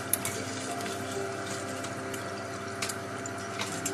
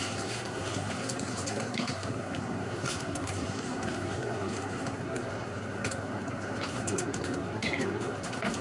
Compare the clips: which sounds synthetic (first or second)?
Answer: second